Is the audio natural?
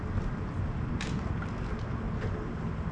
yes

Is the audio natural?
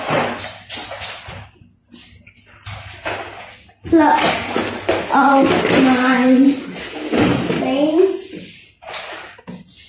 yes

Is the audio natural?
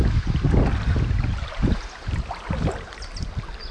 yes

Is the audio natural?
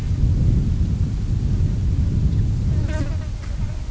yes